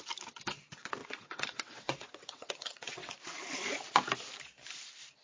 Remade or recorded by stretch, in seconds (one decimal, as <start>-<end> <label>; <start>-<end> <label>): 0.0-1.0 recorded; 1.0-3.1 remade; 3.1-5.2 recorded